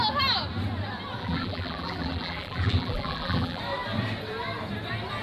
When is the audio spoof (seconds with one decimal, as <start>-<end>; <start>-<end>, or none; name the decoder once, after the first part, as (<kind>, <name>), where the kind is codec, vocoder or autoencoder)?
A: 1.2-3.6 (vocoder, BigVGAN v2)